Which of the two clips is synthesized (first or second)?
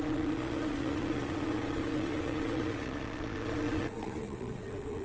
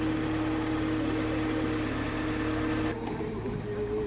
first